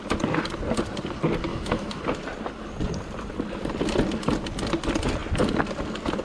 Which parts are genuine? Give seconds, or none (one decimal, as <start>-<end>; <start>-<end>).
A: 0.0-1.5; 2.0-6.2